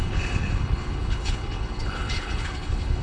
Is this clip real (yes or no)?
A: no